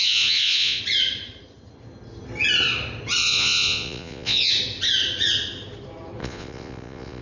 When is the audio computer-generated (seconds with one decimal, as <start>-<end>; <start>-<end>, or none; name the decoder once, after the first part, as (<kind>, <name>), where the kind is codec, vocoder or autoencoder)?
0.0-0.8 (vocoder, Vocos); 3.2-4.5; 6.2-7.2